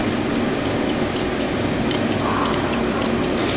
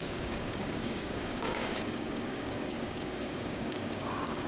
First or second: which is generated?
second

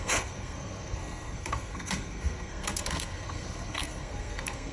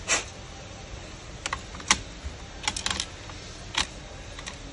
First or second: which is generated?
first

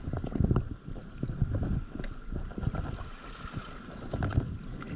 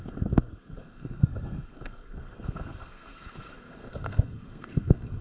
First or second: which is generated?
second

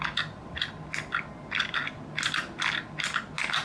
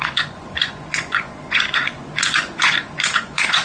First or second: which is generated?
second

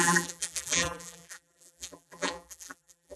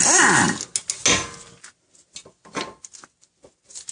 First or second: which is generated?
first